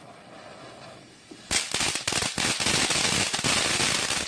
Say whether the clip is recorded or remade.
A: recorded